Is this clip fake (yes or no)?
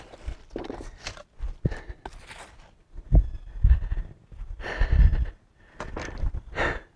no